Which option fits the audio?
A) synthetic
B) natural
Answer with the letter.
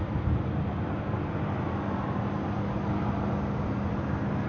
B